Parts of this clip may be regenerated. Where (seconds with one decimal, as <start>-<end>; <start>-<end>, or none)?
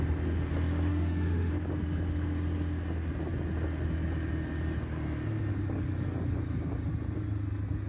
0.9-1.5